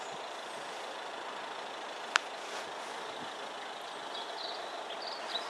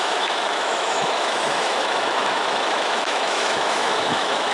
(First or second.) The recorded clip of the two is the first